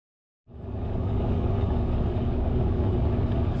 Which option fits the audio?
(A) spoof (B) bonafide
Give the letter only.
A